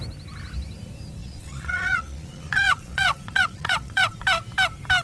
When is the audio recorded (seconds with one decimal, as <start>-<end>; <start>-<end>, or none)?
0.0-1.2; 4.2-5.0